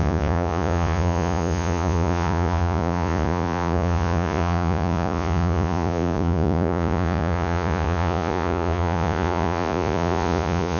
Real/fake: fake